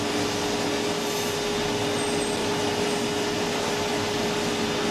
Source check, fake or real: real